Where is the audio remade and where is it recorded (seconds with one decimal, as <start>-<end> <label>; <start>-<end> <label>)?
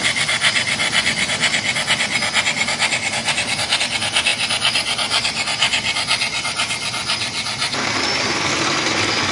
0.0-0.8 recorded; 0.8-1.3 remade; 1.3-9.3 recorded